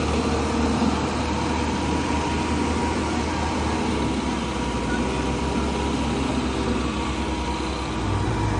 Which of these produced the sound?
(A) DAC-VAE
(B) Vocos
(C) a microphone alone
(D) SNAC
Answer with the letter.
C